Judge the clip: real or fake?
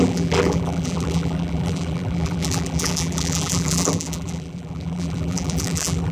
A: fake